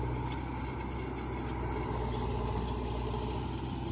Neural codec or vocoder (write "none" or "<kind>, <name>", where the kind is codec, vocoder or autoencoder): none